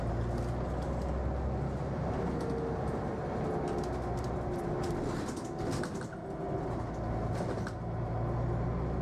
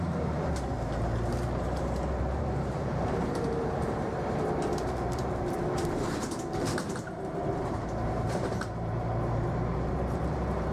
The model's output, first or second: second